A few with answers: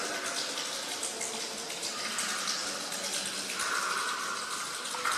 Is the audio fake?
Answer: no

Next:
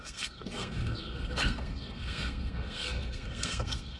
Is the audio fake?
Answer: yes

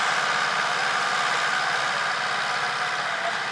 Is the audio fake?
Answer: no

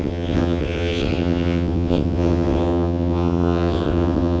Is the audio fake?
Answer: yes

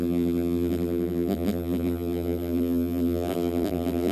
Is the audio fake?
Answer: yes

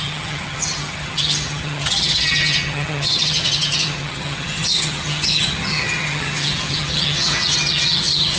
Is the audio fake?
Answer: yes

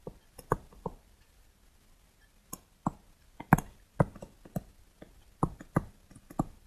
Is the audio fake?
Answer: no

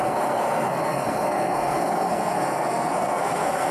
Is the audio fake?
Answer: yes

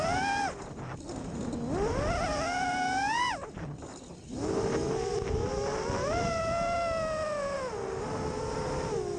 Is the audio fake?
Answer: no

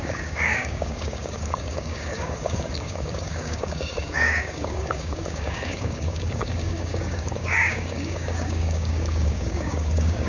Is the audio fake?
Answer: yes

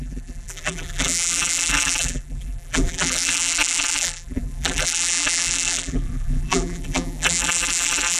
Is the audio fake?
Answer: yes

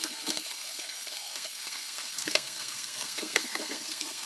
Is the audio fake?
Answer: yes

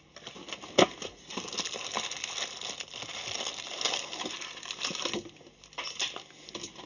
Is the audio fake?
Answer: no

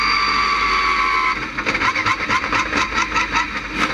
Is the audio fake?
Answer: no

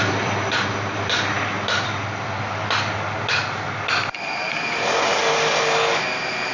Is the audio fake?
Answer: no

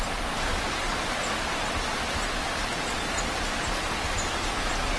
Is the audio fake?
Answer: no